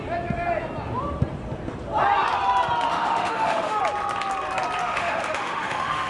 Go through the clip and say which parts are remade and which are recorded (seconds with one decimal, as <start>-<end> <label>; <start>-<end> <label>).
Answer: 0.0-2.9 recorded; 2.9-3.8 remade; 3.8-4.8 recorded; 4.8-6.1 remade